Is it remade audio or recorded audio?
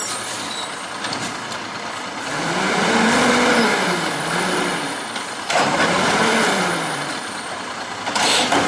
remade